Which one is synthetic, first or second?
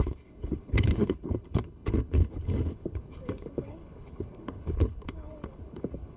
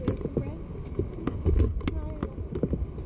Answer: first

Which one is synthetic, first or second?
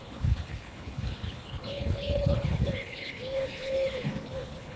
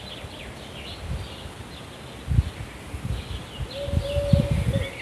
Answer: first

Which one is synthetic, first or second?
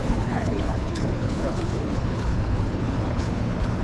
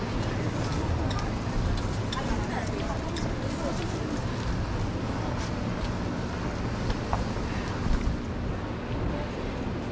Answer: first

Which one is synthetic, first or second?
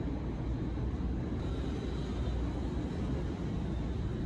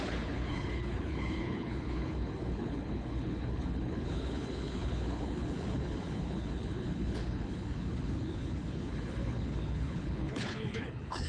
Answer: second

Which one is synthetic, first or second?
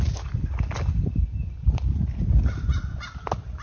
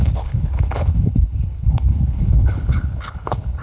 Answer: second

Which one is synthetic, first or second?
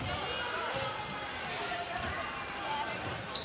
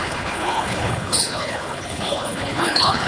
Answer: second